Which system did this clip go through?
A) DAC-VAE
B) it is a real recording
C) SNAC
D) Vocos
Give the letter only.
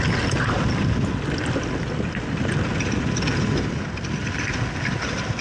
B